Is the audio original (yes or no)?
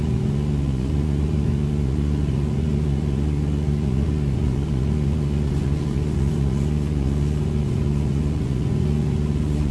no